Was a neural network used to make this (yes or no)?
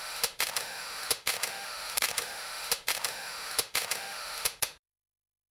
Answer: yes